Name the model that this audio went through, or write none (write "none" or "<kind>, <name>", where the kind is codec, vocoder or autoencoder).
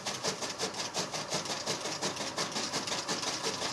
none